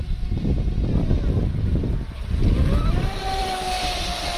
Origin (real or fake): real